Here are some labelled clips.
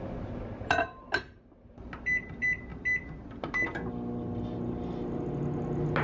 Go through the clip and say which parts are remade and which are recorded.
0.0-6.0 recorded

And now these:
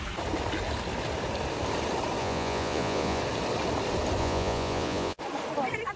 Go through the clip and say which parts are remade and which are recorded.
0.0-2.2 recorded; 2.2-3.2 remade; 3.2-4.2 recorded; 4.2-5.2 remade; 5.2-6.0 recorded

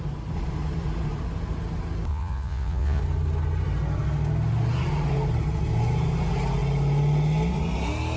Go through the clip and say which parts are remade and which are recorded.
0.0-2.1 recorded; 2.1-3.0 remade; 3.0-8.2 recorded

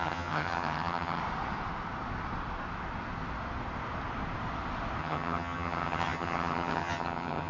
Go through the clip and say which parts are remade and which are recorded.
0.0-1.2 remade; 1.2-5.0 recorded; 5.0-7.5 remade